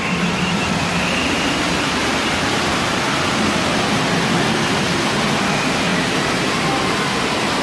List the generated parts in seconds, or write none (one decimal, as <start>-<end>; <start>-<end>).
none